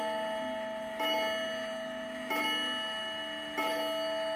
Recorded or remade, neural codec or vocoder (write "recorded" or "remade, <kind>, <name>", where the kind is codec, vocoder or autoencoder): recorded